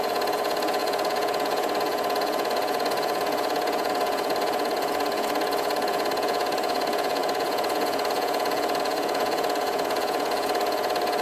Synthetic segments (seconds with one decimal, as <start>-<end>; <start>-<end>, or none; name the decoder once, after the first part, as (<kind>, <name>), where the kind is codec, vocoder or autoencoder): 0.0-11.2 (vocoder, Vocos)